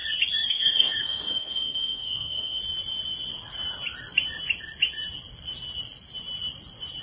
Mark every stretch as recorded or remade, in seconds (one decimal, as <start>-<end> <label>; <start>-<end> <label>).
0.0-0.5 recorded; 0.5-2.6 remade; 2.6-7.0 recorded